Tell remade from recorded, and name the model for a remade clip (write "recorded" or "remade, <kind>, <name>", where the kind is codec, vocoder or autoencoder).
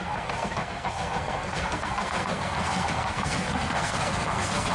remade, codec, SNAC